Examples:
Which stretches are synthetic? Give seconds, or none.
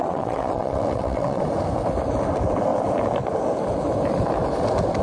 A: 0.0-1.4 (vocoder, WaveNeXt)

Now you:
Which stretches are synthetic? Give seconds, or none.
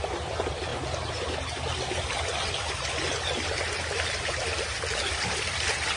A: none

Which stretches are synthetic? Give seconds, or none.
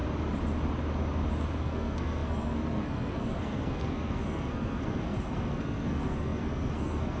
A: 1.6-7.2 (codec, SNAC)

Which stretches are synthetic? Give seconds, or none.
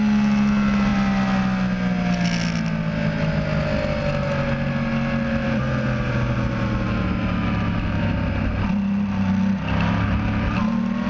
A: none